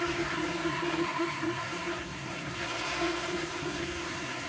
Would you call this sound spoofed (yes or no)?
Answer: yes